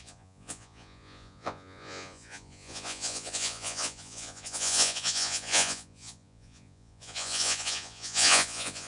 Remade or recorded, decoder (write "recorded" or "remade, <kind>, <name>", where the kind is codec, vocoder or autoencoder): remade, vocoder, Vocos